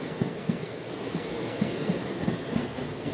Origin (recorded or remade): remade